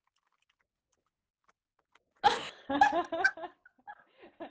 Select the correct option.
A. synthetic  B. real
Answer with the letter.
B